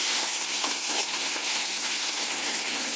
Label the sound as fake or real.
fake